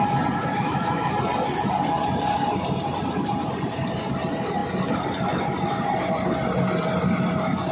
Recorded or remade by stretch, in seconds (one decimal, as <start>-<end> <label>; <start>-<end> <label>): 0.0-0.4 recorded; 0.4-1.1 remade; 1.1-7.7 recorded